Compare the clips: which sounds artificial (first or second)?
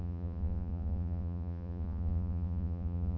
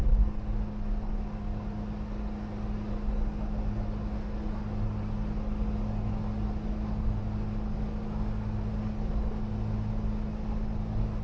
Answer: first